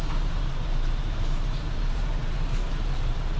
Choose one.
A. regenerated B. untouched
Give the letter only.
A